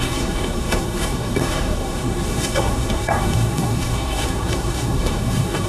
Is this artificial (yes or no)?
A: yes